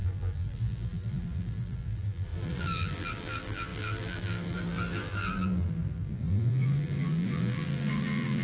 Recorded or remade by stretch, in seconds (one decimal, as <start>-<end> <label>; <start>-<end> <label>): 0.0-8.4 remade